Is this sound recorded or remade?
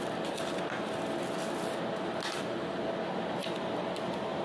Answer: recorded